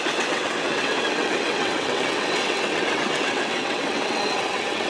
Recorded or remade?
remade